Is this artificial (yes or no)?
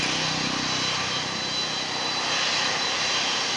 no